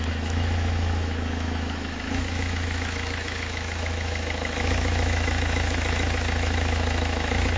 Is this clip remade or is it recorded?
remade